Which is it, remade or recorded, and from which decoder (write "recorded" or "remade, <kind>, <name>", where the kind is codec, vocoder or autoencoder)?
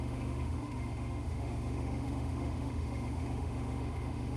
remade, autoencoder, DAC-VAE